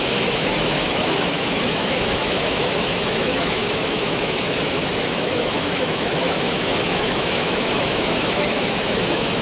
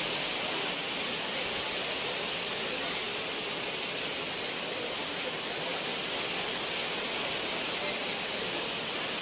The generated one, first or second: first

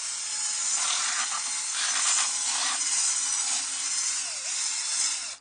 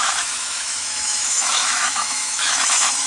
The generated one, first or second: second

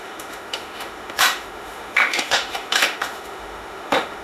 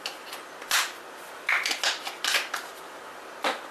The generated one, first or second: first